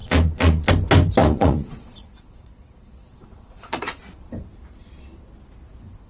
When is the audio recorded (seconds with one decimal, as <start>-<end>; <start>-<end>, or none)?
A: 0.7-1.2; 4.0-6.1